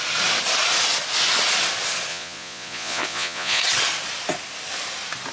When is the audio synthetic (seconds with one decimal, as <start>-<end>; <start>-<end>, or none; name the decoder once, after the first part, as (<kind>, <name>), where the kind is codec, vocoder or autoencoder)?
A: 2.1-3.6 (vocoder, Vocos)